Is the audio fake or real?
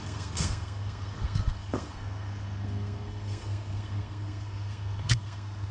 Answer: fake